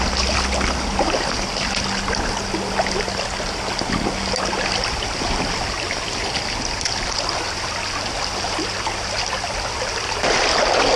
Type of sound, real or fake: real